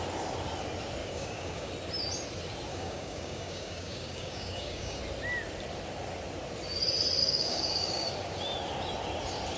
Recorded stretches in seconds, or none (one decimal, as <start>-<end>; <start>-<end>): 0.0-1.0; 1.7-2.7; 5.0-7.2; 8.1-9.6